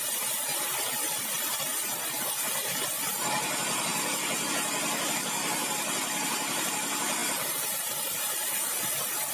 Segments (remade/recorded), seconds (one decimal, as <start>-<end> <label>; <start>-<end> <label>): 0.0-1.7 remade; 1.7-2.4 recorded; 2.4-3.9 remade; 3.9-5.1 recorded; 5.1-9.3 remade